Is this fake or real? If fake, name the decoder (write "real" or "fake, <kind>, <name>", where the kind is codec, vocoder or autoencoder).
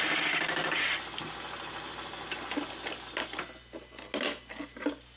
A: real